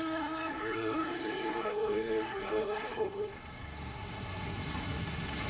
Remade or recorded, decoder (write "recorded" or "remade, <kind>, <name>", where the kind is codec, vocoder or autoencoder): remade, codec, SNAC